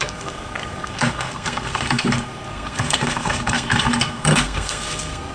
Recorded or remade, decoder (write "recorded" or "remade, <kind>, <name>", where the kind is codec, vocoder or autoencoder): remade, codec, SNAC